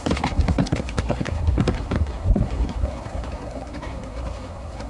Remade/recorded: remade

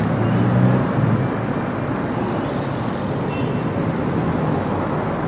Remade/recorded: recorded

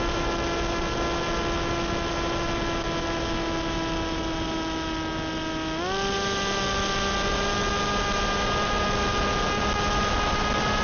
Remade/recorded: recorded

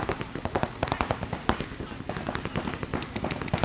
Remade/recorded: recorded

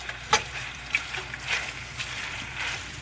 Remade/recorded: remade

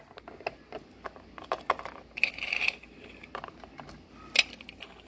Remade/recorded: recorded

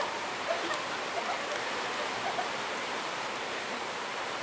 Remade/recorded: recorded